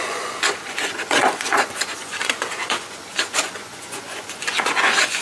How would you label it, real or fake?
fake